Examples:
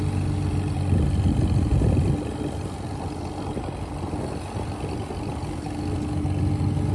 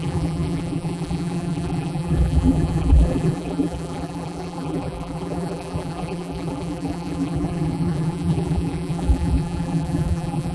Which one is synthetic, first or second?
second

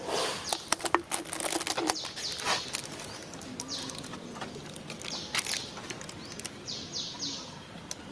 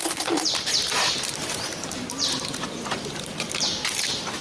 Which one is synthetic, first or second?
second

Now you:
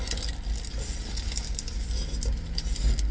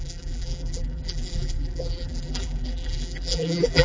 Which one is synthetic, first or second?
second